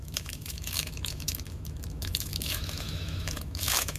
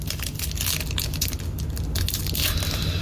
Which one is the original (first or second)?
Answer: second